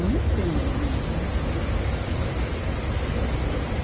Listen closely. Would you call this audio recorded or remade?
recorded